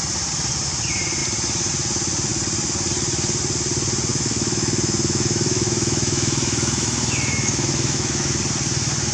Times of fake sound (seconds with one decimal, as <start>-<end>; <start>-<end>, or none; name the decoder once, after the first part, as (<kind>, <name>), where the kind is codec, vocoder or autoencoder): 4.1-8.3 (autoencoder, DAC-VAE)